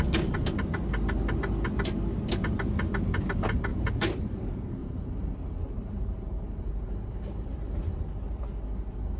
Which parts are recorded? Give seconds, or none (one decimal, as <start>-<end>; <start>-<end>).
0.0-3.7; 4.2-4.8; 8.0-9.2